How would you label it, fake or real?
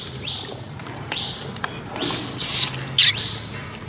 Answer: real